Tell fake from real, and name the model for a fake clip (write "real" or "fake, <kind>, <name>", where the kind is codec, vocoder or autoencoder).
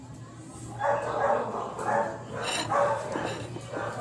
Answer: real